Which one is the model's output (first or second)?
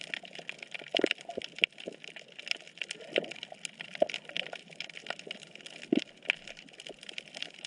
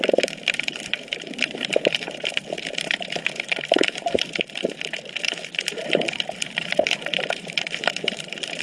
second